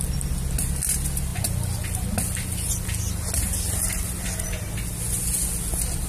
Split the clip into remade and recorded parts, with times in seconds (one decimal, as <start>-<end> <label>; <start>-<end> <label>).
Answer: 0.0-6.1 recorded